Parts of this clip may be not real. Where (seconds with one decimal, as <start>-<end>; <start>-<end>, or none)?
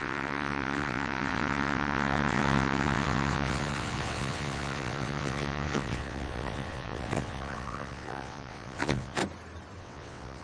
0.0-9.2; 9.8-10.4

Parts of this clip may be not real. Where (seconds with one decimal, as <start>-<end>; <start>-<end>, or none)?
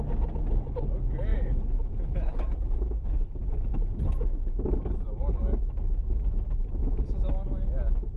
1.3-1.9